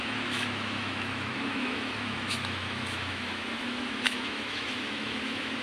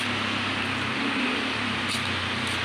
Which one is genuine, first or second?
second